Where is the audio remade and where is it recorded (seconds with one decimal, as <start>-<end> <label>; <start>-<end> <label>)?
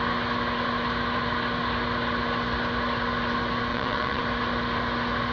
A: 0.0-3.7 recorded; 3.7-4.2 remade; 4.2-5.3 recorded